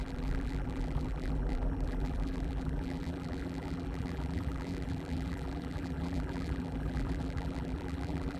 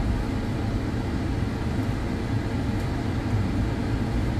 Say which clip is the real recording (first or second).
second